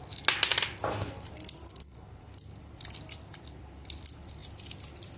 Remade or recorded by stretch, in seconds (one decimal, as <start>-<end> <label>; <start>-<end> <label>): 0.0-5.2 recorded